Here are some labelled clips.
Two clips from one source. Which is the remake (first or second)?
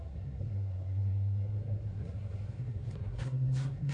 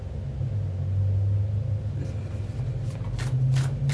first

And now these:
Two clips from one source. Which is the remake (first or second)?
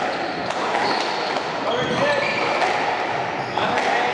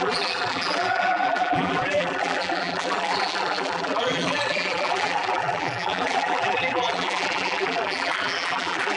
second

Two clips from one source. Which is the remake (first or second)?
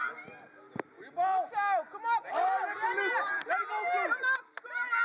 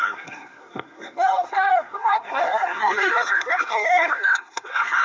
second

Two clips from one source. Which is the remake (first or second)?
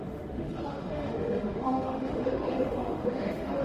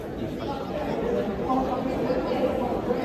first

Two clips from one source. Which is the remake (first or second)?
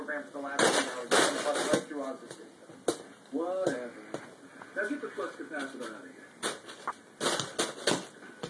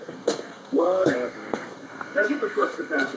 second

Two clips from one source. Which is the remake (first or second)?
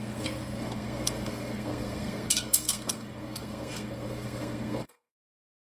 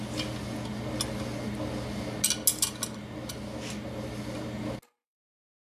first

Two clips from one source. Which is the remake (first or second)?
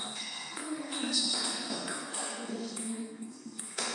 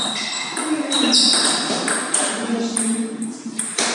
first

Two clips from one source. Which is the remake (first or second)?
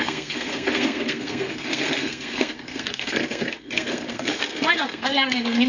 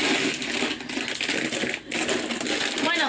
first